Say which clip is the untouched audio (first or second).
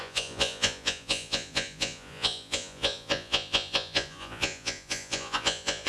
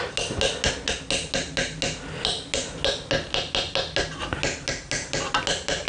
second